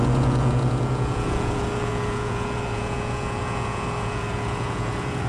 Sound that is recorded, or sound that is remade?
remade